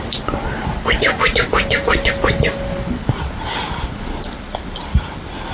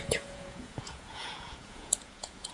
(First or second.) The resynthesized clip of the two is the second